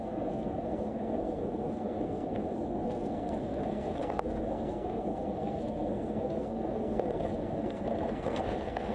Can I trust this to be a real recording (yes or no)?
no